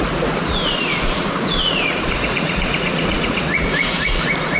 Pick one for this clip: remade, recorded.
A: remade